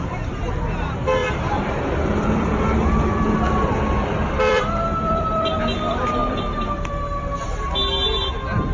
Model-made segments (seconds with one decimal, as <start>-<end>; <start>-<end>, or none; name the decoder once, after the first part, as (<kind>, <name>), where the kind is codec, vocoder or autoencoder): 1.2-5.6 (vocoder, BigVGAN v2); 6.2-7.7